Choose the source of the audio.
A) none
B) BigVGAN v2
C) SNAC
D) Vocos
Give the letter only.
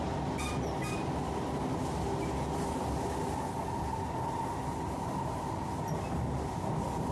A